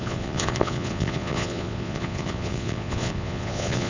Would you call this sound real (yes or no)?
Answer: no